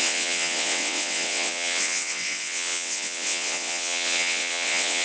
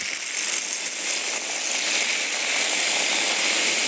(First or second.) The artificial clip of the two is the first